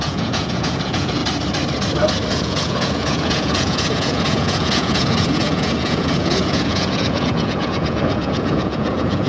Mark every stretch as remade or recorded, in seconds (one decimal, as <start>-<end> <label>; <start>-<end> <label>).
0.0-1.2 remade; 1.2-2.3 recorded; 2.3-9.3 remade

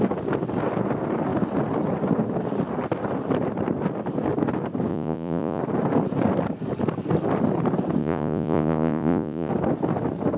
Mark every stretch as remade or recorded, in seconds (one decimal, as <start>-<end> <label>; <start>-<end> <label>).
0.0-4.9 recorded; 4.9-5.6 remade; 5.6-8.0 recorded; 8.0-9.5 remade; 9.5-10.4 recorded

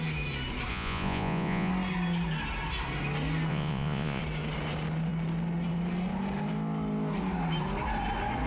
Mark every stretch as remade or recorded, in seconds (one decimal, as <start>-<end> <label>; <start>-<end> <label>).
0.0-0.7 recorded; 0.7-1.7 remade; 1.7-3.5 recorded; 3.5-4.2 remade; 4.2-8.5 recorded